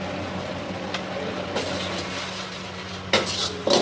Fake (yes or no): no